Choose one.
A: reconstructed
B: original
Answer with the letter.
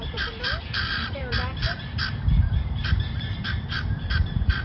A